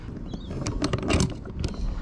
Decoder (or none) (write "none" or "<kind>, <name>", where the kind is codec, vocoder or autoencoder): none